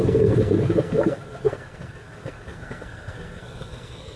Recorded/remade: remade